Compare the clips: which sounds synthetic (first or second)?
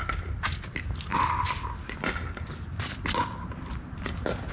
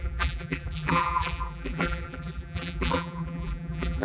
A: second